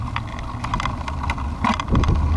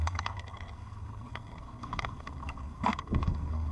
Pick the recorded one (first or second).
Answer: first